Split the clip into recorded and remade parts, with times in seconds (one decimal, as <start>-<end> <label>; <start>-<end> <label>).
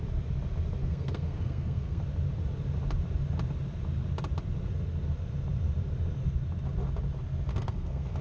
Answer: 0.0-0.8 recorded; 0.8-2.0 remade; 2.0-7.5 recorded; 7.5-8.2 remade